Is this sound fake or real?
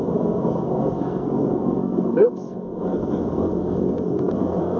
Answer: fake